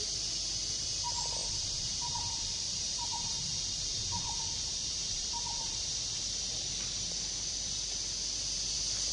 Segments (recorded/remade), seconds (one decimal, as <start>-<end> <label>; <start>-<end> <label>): 0.0-1.4 recorded; 1.4-6.2 remade; 6.2-9.1 recorded